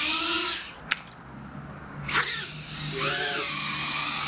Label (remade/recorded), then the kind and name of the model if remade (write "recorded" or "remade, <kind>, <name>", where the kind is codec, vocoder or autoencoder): recorded